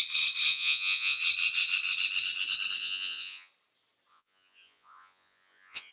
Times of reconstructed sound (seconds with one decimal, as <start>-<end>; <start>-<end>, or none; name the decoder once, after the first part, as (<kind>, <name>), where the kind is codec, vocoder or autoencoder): 0.5-1.2 (vocoder, Vocos); 2.8-3.5; 4.1-5.9